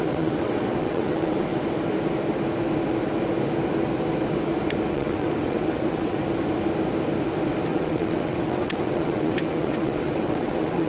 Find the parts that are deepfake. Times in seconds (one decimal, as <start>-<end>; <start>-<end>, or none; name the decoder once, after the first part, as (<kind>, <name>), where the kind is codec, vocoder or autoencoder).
0.0-1.5 (vocoder, WaveNeXt); 4.9-6.2; 7.7-10.9